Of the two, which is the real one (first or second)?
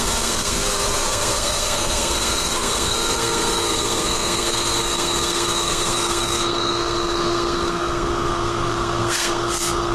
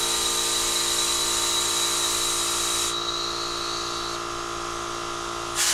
second